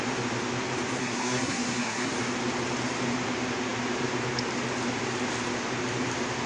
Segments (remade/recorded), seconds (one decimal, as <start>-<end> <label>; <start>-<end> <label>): 0.0-1.0 recorded; 1.0-2.1 remade; 2.1-6.5 recorded